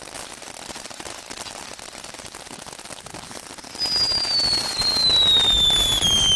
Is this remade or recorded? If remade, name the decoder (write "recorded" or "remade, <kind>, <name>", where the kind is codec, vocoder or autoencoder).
recorded